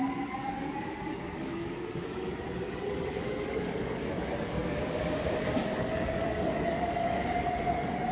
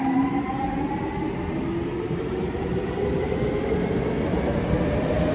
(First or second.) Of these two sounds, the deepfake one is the first